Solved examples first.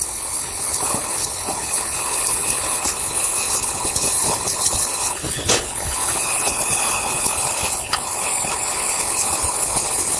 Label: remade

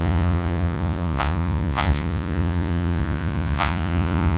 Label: remade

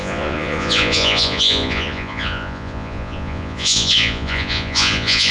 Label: remade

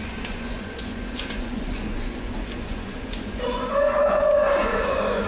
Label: remade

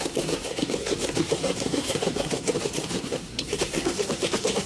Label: remade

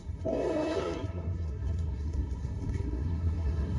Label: remade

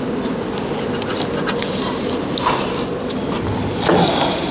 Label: recorded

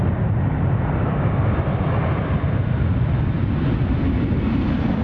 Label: recorded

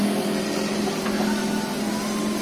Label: recorded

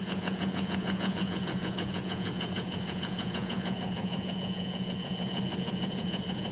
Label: remade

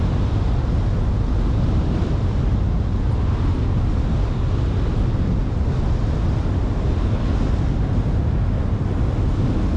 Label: recorded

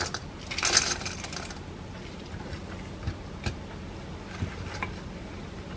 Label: recorded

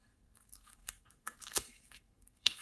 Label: remade